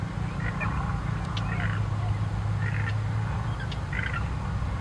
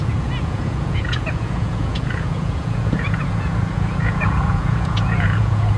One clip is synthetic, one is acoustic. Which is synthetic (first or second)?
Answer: second